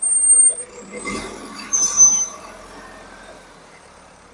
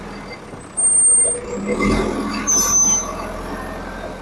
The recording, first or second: second